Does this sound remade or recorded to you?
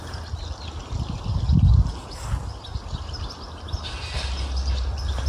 recorded